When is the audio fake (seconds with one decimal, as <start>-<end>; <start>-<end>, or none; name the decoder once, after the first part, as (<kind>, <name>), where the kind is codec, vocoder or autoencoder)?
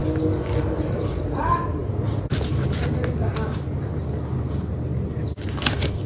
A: none